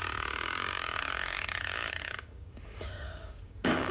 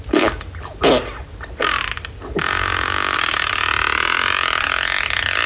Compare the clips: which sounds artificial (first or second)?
first